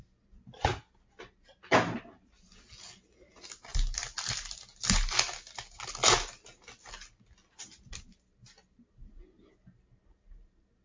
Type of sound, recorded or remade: recorded